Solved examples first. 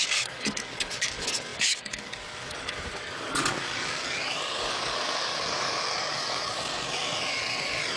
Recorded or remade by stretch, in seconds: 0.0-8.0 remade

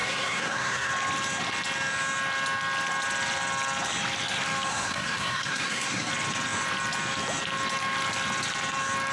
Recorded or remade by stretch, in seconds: 0.0-0.9 remade; 0.9-4.7 recorded; 4.7-6.1 remade; 6.1-9.1 recorded